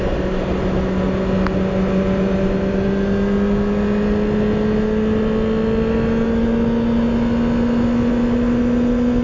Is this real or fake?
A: real